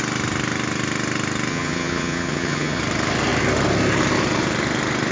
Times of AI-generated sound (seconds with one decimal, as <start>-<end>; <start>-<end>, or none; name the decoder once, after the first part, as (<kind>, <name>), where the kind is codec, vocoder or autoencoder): 1.5-2.8 (vocoder, HiFi-GAN)